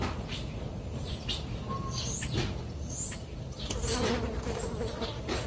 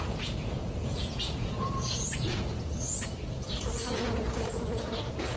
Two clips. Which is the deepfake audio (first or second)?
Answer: second